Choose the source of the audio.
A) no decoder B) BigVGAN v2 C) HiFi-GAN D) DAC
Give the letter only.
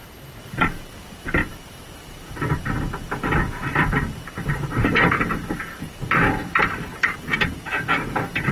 B